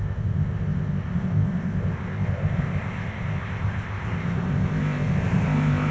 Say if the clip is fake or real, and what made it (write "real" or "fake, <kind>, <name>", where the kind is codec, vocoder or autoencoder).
fake, codec, ZipCodec